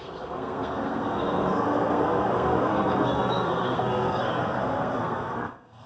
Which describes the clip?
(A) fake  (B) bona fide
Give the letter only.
A